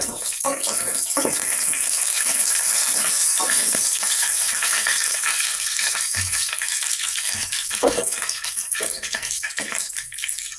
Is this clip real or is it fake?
fake